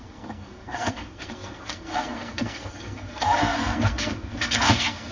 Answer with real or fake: fake